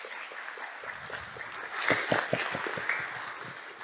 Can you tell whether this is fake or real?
real